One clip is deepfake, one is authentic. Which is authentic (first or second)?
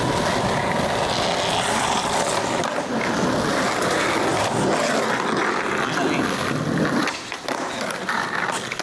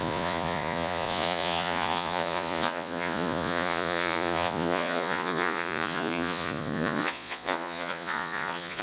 first